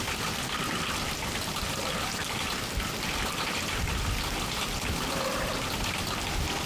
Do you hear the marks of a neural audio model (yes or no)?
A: yes